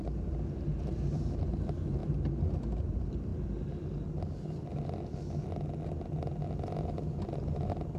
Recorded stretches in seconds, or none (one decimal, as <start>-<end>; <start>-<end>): 2.0-2.8; 3.3-7.5